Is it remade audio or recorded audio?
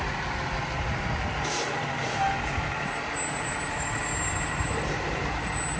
recorded